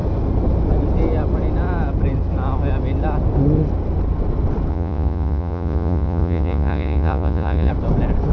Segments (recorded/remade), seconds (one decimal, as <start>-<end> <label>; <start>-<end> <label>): 0.0-4.7 recorded; 4.7-7.7 remade; 7.7-8.3 recorded